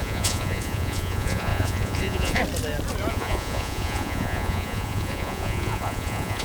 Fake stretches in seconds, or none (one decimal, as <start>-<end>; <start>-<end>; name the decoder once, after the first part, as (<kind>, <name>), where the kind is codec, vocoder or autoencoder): 0.0-2.4 (vocoder, Vocos); 3.1-6.4